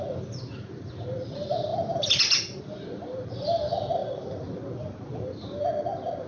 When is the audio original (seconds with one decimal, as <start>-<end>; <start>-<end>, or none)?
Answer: 0.0-6.3